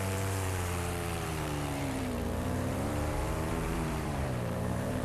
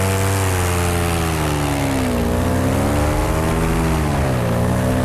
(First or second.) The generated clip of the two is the first